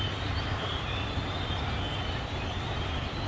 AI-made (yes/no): no